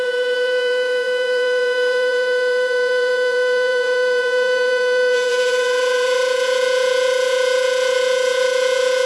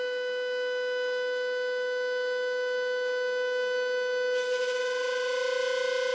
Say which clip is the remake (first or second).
first